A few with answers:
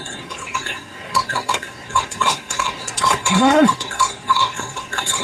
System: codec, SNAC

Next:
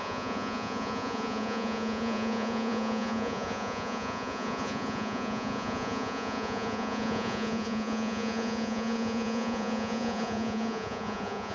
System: vocoder, Vocos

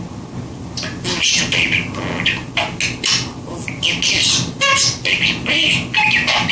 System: none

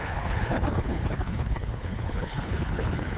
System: codec, HILCodec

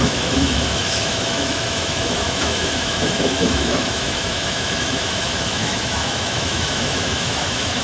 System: autoencoder, DAC-VAE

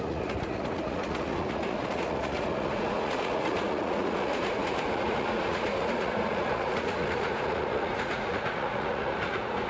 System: vocoder, Vocos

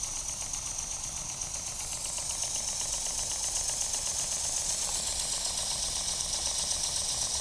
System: none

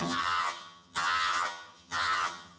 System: vocoder, HiFi-GAN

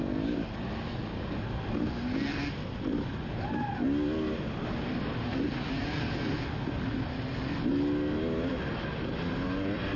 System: none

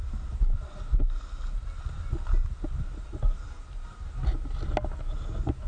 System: none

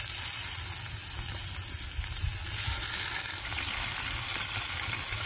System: none